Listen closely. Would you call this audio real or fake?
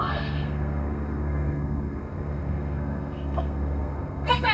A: fake